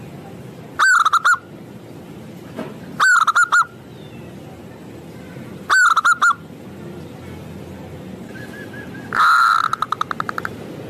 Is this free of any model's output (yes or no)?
yes